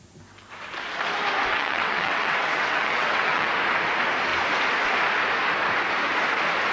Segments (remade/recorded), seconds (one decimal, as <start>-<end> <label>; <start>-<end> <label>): 0.0-1.5 recorded; 1.5-3.5 remade; 3.5-6.7 recorded